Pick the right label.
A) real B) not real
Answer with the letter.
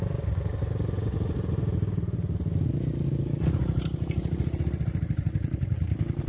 A